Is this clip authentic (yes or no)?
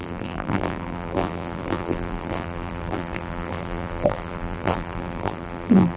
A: no